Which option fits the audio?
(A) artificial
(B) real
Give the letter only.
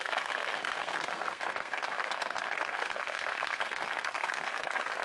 A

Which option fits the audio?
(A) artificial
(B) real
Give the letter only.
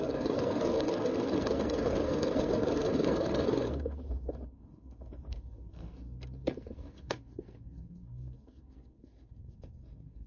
A